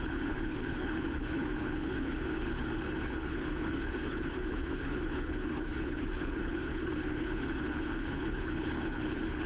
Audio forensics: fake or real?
fake